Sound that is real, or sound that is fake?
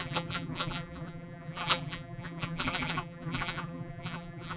fake